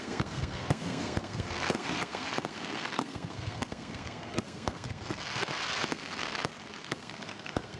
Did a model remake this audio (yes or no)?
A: yes